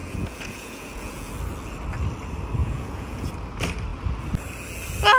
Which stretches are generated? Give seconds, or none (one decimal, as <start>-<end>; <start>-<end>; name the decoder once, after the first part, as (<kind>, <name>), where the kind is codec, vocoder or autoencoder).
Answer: 0.0-1.3 (vocoder, Vocos); 2.6-3.3